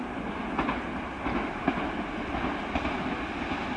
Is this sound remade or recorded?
recorded